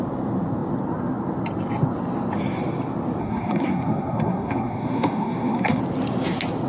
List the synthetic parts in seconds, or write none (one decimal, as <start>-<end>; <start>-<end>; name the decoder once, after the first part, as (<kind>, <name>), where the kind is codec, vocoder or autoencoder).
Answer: 3.2-5.8 (codec, SNAC)